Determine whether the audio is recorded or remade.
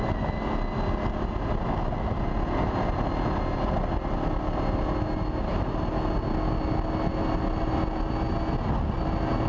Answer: recorded